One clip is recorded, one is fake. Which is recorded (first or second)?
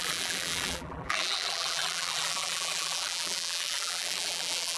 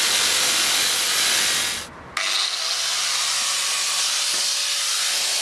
second